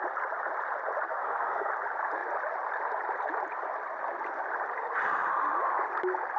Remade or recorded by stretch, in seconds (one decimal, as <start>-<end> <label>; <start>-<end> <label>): 0.0-1.1 recorded; 1.1-1.7 remade; 1.7-6.4 recorded